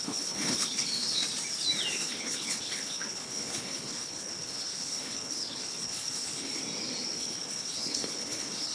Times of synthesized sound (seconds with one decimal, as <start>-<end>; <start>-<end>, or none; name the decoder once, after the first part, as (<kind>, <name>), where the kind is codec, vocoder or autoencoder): 0.0-1.2 (codec, HILCodec); 1.9-6.6; 7.2-8.7